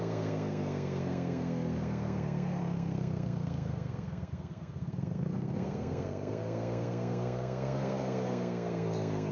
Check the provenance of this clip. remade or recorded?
remade